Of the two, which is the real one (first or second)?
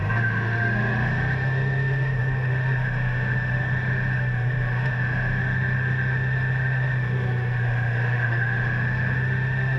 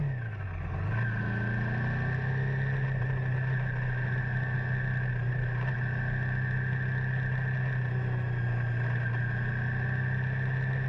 second